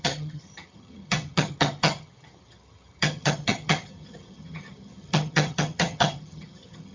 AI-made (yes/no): yes